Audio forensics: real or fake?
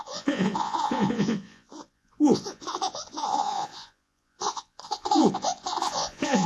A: fake